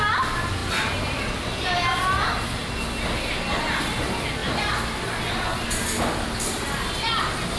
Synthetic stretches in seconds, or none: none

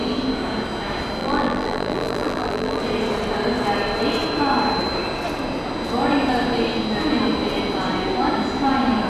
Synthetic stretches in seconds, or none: 1.2-2.8 (vocoder, BigVGAN v2)

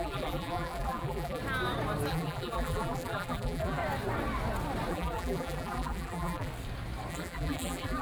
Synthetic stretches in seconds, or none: 0.0-1.4 (vocoder, BigVGAN v2); 2.1-3.8; 4.9-6.5; 7.1-8.0

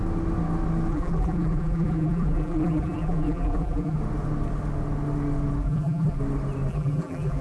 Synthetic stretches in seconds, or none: 0.9-4.0 (vocoder, BigVGAN v2); 5.6-6.2; 6.7-7.4

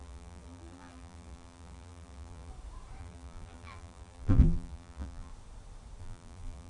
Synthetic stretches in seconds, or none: 0.0-2.5 (vocoder, BigVGAN v2); 3.0-5.3; 6.0-6.7

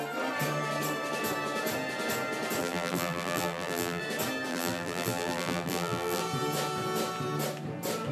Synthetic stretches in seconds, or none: 2.6-4.0 (vocoder, BigVGAN v2); 4.5-6.2

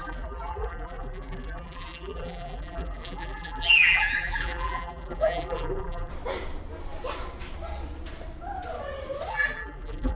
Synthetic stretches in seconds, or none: 0.0-6.1 (vocoder, BigVGAN v2); 9.3-10.2

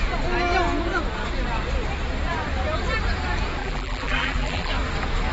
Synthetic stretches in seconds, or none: 3.6-4.7 (vocoder, BigVGAN v2)